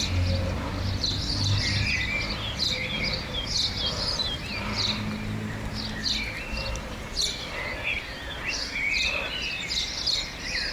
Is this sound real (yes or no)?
yes